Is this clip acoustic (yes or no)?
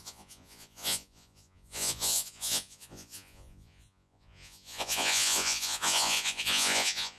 no